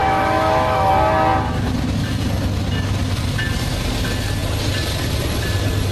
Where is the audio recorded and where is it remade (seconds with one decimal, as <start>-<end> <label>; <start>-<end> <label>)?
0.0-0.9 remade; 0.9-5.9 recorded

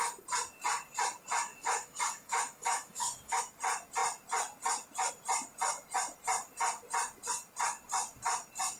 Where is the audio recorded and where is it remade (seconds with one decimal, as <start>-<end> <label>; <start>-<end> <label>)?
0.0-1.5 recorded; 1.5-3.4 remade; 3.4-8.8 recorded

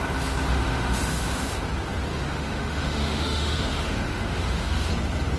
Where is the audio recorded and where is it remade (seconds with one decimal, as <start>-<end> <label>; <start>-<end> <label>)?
0.0-0.5 recorded; 0.5-1.6 remade; 1.6-2.1 recorded; 2.1-4.9 remade; 4.9-5.4 recorded

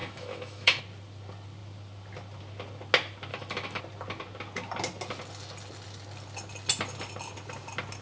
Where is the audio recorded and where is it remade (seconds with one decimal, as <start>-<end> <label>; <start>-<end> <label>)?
0.0-0.8 remade; 0.8-3.3 recorded; 3.3-3.8 remade; 3.8-8.0 recorded

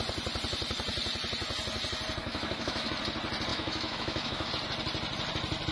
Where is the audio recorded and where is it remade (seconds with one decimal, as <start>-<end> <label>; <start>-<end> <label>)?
0.0-2.2 recorded; 2.2-2.9 remade; 2.9-3.5 recorded; 3.5-4.5 remade; 4.5-5.7 recorded

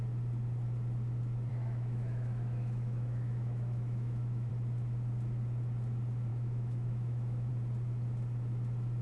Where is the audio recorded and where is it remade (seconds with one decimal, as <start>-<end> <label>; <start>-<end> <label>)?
0.0-1.5 recorded; 1.5-4.5 remade; 4.5-6.3 recorded; 6.3-7.5 remade; 7.5-9.0 recorded

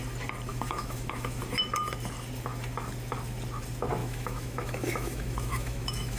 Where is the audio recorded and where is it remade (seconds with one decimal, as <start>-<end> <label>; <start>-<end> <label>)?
0.0-0.5 recorded; 0.5-1.4 remade; 1.4-4.0 recorded; 4.0-6.2 remade

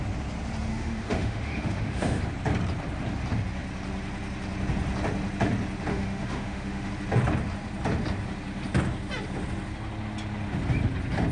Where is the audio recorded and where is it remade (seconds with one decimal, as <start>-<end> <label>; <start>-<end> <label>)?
0.0-0.7 recorded; 0.7-2.2 remade; 2.2-5.9 recorded; 5.9-6.9 remade; 6.9-11.3 recorded